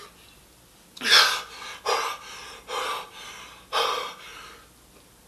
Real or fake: real